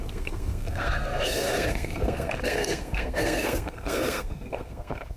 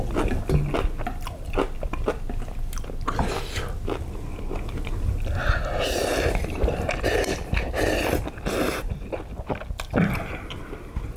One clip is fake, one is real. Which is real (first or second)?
second